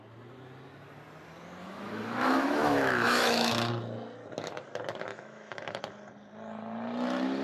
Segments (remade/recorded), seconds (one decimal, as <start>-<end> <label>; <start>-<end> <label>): 0.0-1.6 recorded; 1.6-3.7 remade; 3.7-5.1 recorded; 5.1-5.8 remade; 5.8-7.4 recorded